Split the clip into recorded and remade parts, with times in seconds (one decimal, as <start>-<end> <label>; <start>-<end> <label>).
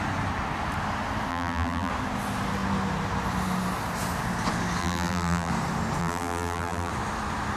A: 0.0-1.3 recorded; 1.3-1.9 remade; 1.9-4.8 recorded; 4.8-5.5 remade; 5.5-6.0 recorded; 6.0-6.9 remade; 6.9-7.6 recorded